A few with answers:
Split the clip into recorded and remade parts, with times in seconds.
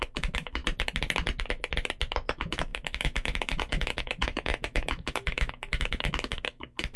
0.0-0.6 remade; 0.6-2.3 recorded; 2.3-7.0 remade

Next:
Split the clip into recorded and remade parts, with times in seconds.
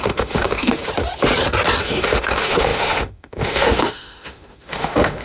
0.0-0.8 remade; 0.8-1.8 recorded; 1.8-5.2 remade